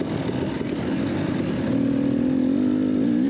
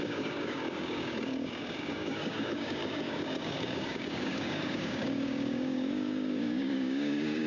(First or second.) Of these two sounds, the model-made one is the second